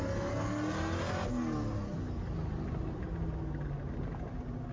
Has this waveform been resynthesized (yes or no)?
no